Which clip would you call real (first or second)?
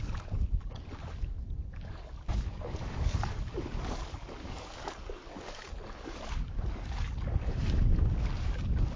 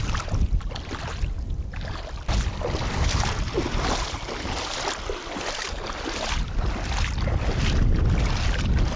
second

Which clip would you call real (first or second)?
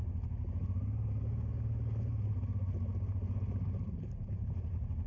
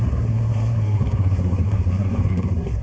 first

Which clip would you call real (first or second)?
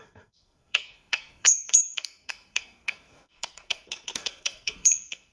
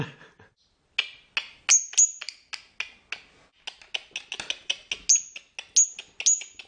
second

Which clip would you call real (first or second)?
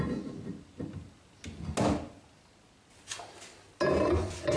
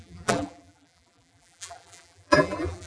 first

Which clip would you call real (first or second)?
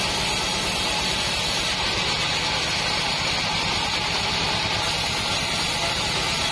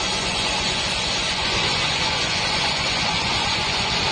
first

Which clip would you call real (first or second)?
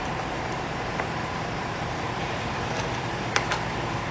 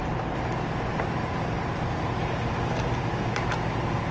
second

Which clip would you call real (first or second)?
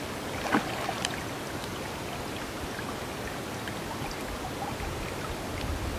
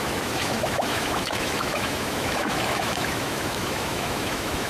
first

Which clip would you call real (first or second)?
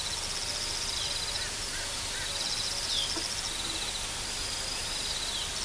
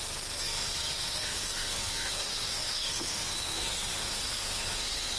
first